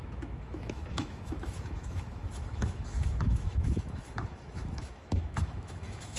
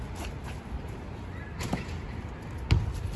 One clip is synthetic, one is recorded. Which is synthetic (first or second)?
first